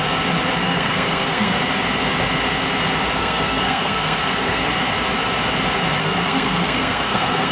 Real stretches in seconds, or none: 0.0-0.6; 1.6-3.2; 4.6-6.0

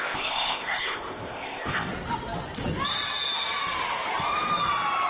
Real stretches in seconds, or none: 1.9-5.1